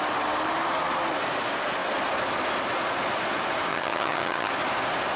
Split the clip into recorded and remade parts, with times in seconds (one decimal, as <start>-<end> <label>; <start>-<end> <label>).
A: 0.0-3.7 recorded; 3.7-4.5 remade; 4.5-5.2 recorded